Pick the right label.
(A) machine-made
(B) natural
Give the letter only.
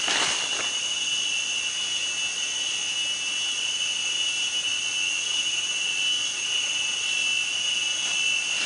B